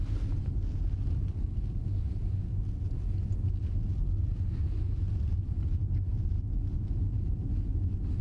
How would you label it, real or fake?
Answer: real